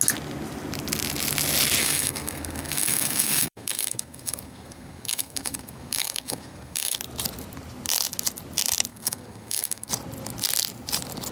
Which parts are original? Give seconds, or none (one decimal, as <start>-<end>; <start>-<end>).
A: 0.0-1.8; 7.0-8.9; 9.9-11.3